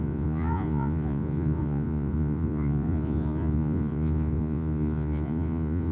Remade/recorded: remade